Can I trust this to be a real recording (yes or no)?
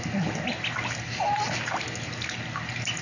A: yes